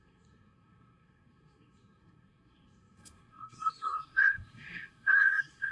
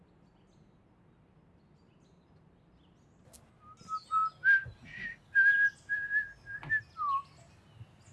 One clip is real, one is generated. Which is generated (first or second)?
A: first